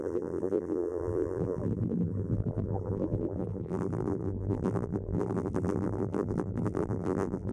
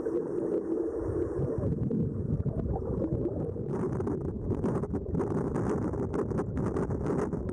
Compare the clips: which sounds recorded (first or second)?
second